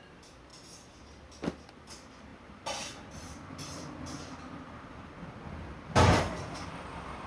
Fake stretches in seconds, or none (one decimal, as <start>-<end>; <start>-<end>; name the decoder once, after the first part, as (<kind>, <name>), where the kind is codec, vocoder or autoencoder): 2.3-6.7 (vocoder, BigVGAN v2)